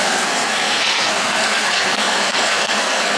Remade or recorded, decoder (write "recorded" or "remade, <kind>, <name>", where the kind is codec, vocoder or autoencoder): remade, codec, SNAC